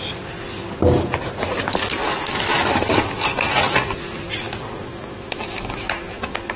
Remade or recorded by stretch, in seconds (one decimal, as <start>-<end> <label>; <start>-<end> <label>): 0.0-2.0 recorded; 2.0-2.6 remade; 2.6-4.9 recorded; 4.9-6.6 remade